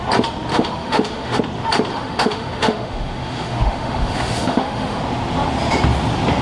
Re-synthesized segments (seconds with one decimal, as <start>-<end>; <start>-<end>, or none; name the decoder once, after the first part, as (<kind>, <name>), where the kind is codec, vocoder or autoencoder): 0.5-1.4 (autoencoder, DAC-VAE); 1.9-5.0